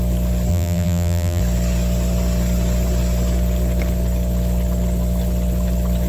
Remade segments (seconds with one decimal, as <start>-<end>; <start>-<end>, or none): 0.5-1.4